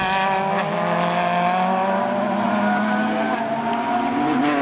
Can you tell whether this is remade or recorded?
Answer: recorded